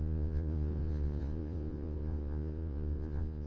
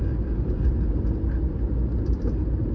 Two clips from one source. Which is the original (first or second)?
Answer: second